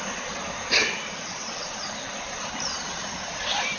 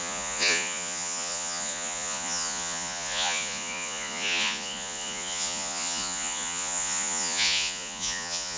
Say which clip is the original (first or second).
first